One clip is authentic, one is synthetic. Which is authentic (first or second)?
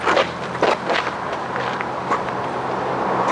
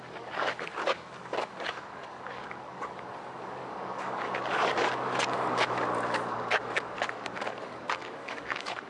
first